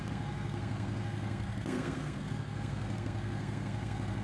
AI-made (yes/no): yes